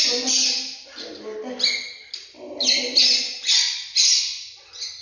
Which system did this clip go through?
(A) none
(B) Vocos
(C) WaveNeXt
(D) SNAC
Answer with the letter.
A